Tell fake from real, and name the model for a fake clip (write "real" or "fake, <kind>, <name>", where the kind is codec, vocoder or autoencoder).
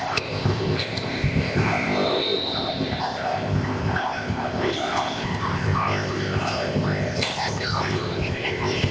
fake, codec, ZipCodec